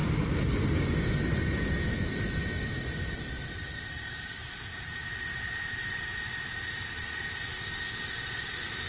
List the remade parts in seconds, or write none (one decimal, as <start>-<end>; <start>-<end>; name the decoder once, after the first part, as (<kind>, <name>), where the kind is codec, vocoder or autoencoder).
none